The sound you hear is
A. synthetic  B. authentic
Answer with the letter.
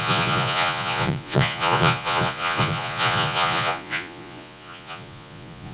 A